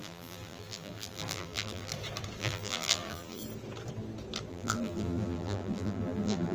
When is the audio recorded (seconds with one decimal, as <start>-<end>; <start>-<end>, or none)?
1.9-2.4; 3.4-4.5